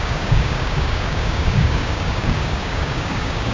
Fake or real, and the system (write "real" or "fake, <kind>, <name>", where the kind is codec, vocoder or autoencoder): fake, codec, DAC